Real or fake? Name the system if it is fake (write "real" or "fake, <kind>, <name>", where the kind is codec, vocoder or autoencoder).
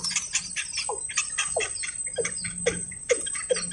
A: real